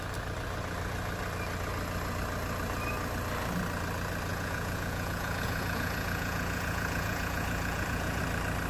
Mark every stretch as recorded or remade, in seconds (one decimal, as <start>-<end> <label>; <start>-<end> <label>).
0.0-4.3 recorded; 4.3-8.2 remade; 8.2-8.7 recorded